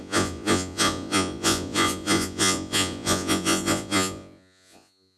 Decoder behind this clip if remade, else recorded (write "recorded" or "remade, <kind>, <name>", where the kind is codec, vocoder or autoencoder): remade, vocoder, Vocos